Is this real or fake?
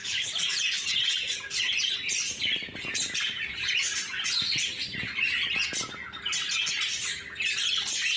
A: real